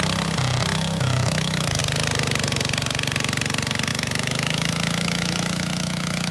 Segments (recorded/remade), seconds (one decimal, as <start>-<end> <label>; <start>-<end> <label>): 0.0-0.7 recorded; 0.7-1.8 remade; 1.8-3.9 recorded; 3.9-6.3 remade